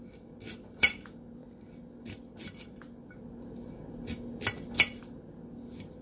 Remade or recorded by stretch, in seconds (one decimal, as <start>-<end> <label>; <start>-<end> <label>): 0.0-6.0 recorded